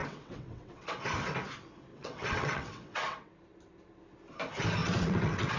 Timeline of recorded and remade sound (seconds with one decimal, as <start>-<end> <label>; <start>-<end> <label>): 0.0-1.0 remade; 1.0-1.9 recorded; 1.9-3.3 remade; 3.3-4.8 recorded; 4.8-5.6 remade